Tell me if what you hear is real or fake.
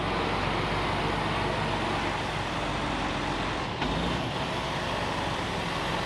real